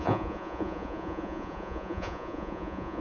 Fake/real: fake